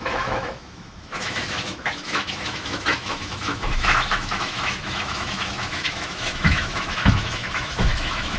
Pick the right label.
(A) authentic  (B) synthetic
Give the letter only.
B